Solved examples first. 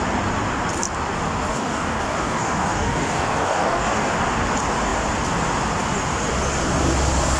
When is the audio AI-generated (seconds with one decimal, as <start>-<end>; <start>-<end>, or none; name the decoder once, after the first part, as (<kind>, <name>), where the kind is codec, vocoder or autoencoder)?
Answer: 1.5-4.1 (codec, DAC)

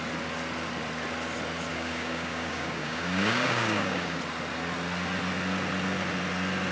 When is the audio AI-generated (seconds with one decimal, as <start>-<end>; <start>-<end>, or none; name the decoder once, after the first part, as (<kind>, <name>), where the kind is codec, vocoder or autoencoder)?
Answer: 1.7-4.2 (codec, DAC)

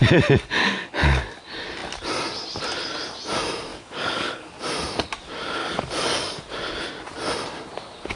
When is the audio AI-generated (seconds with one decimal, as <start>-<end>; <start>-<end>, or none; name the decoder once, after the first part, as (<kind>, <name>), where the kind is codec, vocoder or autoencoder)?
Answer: 0.6-1.2 (codec, DAC); 3.7-4.5; 5.6-6.4

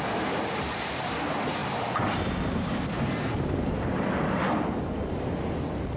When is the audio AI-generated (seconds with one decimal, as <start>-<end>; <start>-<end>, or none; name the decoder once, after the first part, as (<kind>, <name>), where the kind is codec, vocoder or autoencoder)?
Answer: none

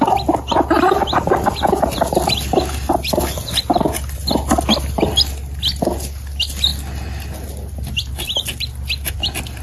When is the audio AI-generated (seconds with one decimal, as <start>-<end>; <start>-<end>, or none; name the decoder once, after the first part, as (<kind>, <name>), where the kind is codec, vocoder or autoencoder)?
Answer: none

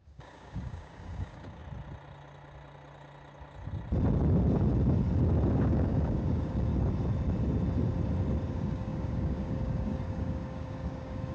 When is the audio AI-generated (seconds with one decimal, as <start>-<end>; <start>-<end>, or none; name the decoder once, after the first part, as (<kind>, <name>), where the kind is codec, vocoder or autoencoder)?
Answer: 0.0-1.6 (codec, DAC); 5.5-6.7; 8.5-11.3